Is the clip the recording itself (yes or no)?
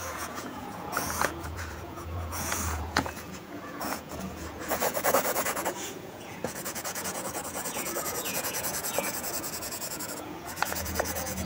no